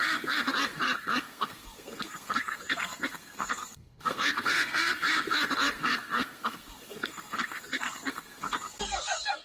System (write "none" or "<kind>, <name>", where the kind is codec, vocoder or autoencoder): codec, SNAC